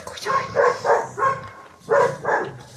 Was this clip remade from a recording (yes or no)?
yes